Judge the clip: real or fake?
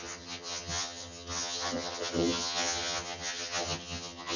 fake